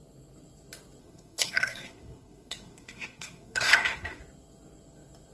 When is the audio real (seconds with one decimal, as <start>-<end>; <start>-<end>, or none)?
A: 0.0-1.0; 4.2-5.3